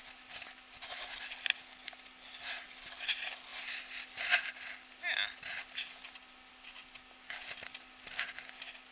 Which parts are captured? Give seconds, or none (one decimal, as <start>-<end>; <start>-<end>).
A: 0.0-8.9